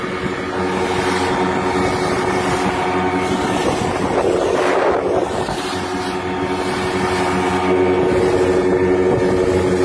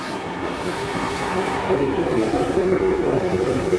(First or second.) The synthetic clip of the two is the second